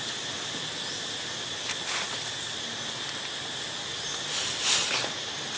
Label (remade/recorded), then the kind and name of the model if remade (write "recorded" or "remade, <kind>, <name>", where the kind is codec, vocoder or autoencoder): recorded